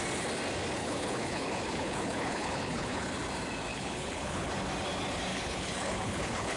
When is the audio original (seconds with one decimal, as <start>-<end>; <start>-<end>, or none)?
0.0-0.8; 3.1-3.7; 4.5-5.3